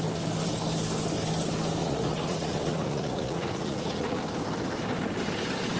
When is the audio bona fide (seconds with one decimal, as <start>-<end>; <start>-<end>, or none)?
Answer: 0.0-1.8; 4.2-5.8

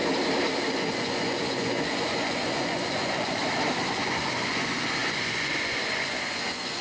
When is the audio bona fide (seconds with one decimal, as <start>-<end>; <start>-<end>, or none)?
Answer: 0.0-0.7; 3.4-3.9

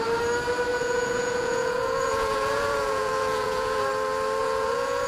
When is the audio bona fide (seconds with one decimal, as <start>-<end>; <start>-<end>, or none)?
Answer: 0.0-0.7; 3.8-4.4

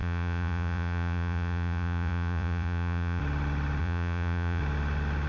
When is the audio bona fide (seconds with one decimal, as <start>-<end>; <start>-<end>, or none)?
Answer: 3.2-3.8; 4.6-5.3

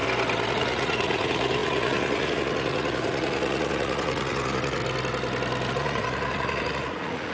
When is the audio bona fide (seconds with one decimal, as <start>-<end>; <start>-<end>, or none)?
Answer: 0.0-0.5; 4.8-5.7

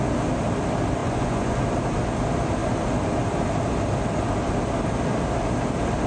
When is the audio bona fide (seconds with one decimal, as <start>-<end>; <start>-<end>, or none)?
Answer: 0.0-1.0; 1.6-6.1

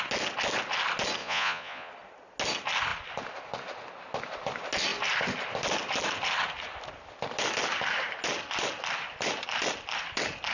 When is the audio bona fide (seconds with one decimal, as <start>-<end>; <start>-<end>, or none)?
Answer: 0.0-1.2; 1.9-10.5

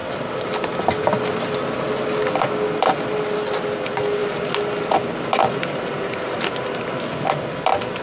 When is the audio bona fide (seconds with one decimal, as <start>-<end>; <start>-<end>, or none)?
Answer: 0.0-8.0